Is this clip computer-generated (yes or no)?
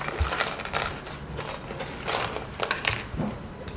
no